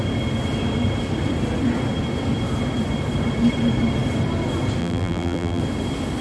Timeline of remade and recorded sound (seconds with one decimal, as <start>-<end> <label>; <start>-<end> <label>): 0.0-4.8 recorded; 4.8-5.6 remade; 5.6-6.2 recorded